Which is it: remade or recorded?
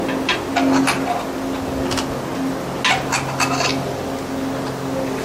recorded